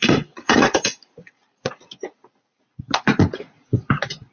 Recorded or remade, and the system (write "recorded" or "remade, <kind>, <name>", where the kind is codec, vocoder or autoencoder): remade, vocoder, Vocos